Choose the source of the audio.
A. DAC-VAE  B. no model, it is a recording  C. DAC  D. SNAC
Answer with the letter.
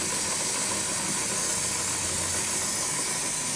B